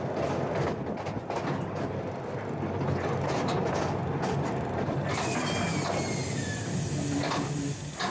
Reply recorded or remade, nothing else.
recorded